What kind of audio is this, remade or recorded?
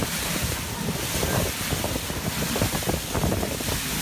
recorded